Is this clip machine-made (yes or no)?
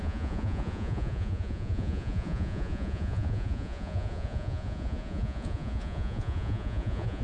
yes